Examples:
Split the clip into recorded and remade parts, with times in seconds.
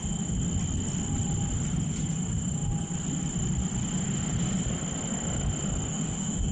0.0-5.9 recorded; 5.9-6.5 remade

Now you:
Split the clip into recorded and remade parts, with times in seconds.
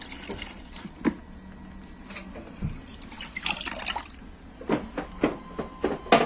0.0-6.3 recorded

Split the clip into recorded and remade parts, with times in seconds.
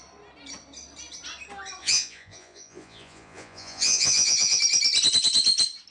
0.0-1.8 recorded; 1.8-4.6 remade; 4.6-5.9 recorded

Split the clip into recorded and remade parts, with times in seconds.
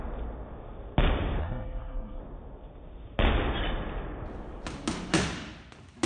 0.0-1.4 recorded; 1.4-2.2 remade; 2.2-6.1 recorded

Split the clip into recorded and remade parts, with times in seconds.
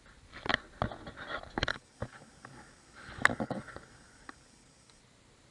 0.0-1.7 recorded; 1.7-5.0 remade; 5.0-5.5 recorded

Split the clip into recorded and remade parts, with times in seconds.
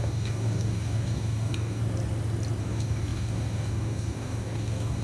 0.0-1.8 remade; 1.8-2.6 recorded; 2.6-5.0 remade